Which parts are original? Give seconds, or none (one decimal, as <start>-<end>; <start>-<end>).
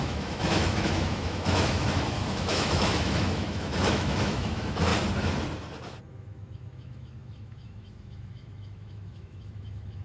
4.9-6.1